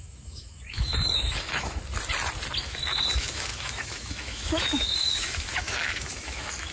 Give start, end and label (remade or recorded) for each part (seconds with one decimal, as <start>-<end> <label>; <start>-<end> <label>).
0.0-1.8 remade; 1.8-2.6 recorded; 2.6-6.7 remade